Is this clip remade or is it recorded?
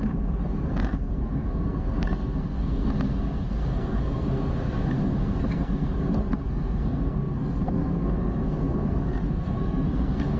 remade